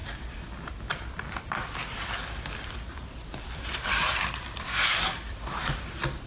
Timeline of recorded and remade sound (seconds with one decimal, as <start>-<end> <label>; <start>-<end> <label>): 0.0-0.7 remade; 0.7-1.8 recorded; 1.8-5.6 remade; 5.6-6.3 recorded